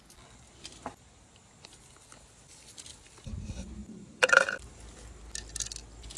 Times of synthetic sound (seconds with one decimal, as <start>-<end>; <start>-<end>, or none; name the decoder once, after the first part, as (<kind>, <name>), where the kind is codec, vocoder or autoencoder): 3.8-4.7 (vocoder, BigVGAN v2)